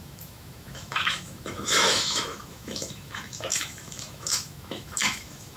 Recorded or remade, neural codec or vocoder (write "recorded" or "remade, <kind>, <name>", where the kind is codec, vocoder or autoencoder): remade, autoencoder, DAC-VAE